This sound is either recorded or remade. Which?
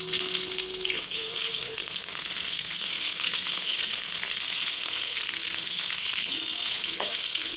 remade